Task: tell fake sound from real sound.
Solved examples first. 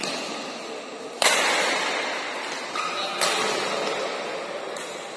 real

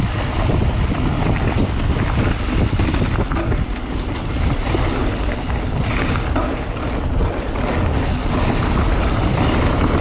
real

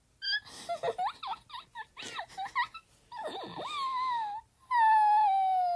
real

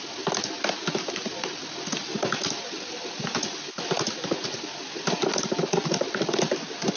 real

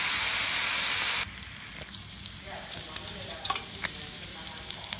real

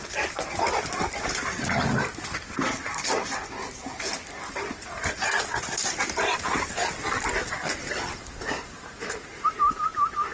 real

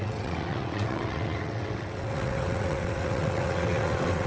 fake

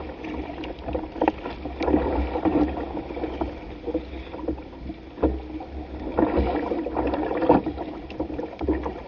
real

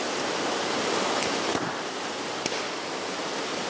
real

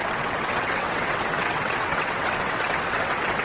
fake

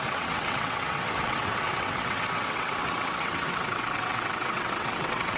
fake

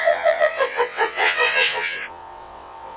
fake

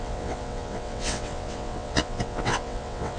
fake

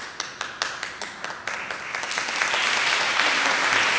real